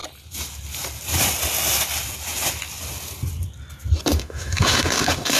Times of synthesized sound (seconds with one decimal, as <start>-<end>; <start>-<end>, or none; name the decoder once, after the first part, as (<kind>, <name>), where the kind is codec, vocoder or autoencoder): 4.1-5.4 (autoencoder, DAC-VAE)